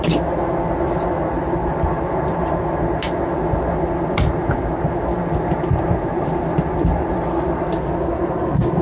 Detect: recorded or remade recorded